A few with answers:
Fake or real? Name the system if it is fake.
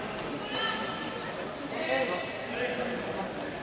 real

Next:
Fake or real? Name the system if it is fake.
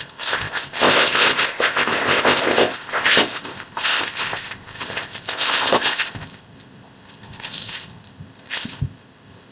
fake, codec, ZipCodec